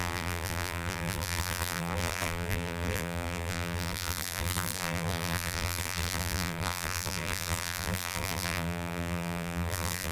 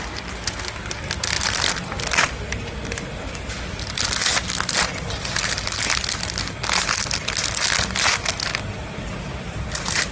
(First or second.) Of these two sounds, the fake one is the first